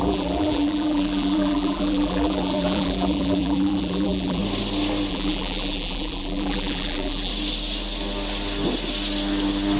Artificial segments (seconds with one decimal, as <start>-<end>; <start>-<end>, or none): 0.0-4.4; 5.1-7.3